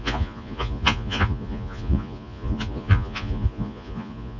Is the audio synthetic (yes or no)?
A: yes